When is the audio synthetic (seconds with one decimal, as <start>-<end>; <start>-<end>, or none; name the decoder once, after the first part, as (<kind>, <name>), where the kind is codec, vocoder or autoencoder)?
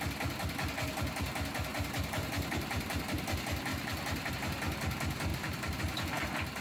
1.7-3.0 (vocoder, BigVGAN v2); 3.7-4.3; 5.3-5.8